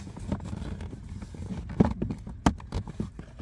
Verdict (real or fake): real